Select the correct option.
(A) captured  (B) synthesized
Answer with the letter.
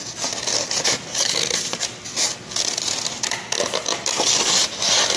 A